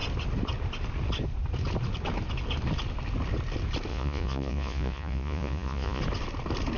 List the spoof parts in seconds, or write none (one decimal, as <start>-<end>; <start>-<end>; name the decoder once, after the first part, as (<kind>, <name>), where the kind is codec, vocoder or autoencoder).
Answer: 3.9-6.0 (vocoder, Vocos)